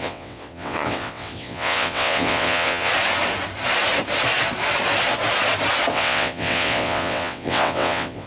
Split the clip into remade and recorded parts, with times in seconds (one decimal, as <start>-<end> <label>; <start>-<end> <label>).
0.0-2.9 remade; 2.9-5.9 recorded; 5.9-8.3 remade